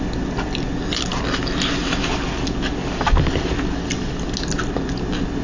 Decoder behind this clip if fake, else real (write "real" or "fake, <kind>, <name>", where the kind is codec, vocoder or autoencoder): real